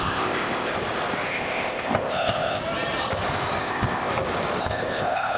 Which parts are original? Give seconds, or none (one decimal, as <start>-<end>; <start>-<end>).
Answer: 0.7-1.3; 2.6-3.6; 4.1-4.6